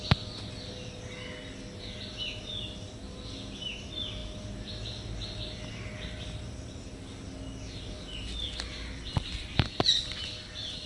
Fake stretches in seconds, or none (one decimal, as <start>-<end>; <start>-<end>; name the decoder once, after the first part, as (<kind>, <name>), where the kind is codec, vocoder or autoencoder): none